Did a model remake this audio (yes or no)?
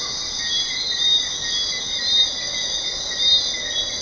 no